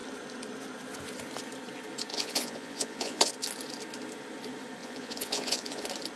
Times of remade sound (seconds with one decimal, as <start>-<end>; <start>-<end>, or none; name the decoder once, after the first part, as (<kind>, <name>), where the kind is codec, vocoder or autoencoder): 2.1-3.3 (vocoder, Vocos); 4.8-5.8